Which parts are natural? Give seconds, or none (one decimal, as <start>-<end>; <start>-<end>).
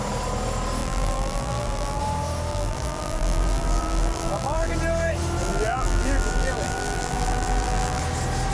0.0-0.8; 2.0-2.5; 4.7-5.4; 8.0-8.5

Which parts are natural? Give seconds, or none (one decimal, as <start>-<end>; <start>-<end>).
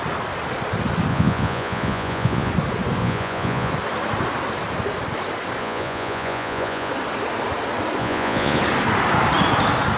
0.0-1.1; 2.5-3.0; 3.7-5.6; 6.9-8.0; 8.6-10.0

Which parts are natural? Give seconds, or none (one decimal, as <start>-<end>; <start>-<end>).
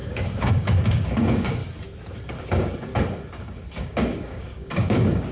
1.6-2.4; 2.9-3.8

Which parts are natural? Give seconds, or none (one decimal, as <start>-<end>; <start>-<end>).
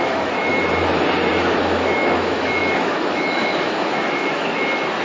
0.5-1.3